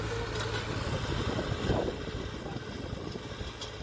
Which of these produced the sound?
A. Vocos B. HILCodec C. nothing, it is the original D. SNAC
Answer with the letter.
C